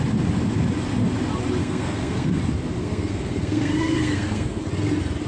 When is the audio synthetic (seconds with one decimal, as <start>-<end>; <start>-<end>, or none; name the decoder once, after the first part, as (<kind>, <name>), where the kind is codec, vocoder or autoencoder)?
1.6-2.4 (codec, SNAC); 2.8-4.6